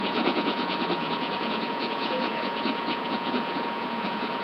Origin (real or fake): fake